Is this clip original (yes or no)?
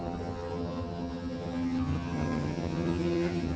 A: no